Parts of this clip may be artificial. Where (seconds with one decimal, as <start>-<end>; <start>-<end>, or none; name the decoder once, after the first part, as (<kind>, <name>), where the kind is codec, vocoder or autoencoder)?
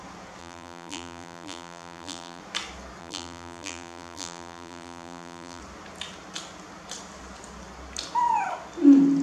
0.4-2.4 (vocoder, BigVGAN v2); 3.0-5.6